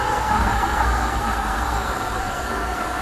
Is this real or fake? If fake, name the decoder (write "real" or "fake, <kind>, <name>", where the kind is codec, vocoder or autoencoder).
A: fake, codec, SNAC